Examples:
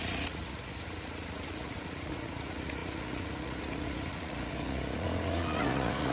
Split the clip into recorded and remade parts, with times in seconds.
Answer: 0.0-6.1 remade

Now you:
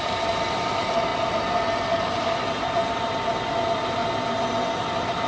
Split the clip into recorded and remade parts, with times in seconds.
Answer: 0.0-1.1 remade; 1.1-2.9 recorded; 2.9-4.0 remade; 4.0-4.7 recorded; 4.7-5.3 remade

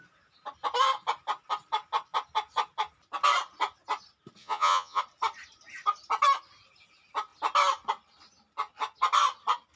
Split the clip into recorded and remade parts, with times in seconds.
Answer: 0.0-4.4 recorded; 4.4-5.0 remade; 5.0-9.8 recorded